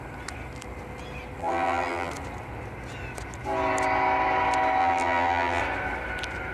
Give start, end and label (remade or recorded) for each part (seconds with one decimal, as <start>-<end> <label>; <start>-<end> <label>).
0.0-1.4 recorded; 1.4-2.1 remade; 2.1-4.8 recorded; 4.8-5.6 remade; 5.6-6.5 recorded